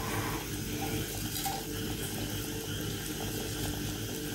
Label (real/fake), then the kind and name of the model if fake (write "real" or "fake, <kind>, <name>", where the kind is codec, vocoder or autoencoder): real